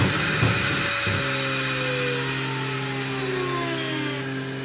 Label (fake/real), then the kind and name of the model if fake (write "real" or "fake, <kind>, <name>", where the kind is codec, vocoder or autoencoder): real